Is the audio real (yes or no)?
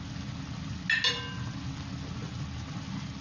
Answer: yes